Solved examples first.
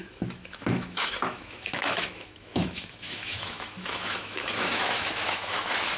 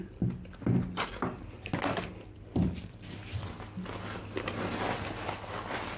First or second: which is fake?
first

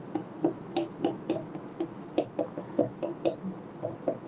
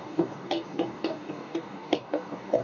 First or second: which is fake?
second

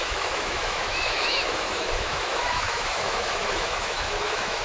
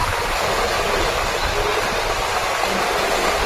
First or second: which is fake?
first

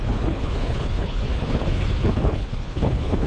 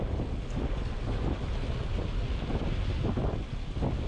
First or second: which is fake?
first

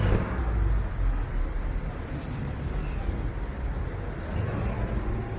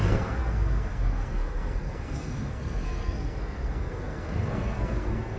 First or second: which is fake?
second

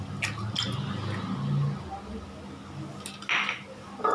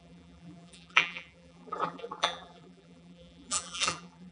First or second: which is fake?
second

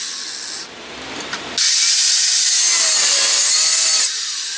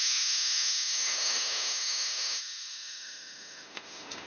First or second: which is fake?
second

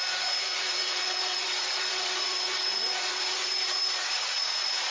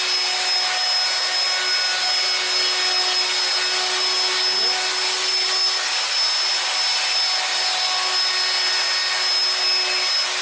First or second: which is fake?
first